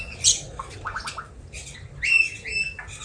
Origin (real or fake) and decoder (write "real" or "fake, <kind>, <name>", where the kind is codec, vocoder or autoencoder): real